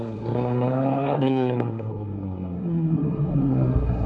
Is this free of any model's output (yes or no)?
no